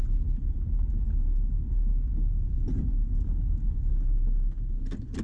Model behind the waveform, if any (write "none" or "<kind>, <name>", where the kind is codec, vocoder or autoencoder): none